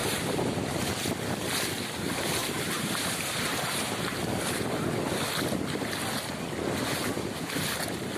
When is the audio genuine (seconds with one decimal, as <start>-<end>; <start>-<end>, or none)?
1.1-2.4; 4.3-8.2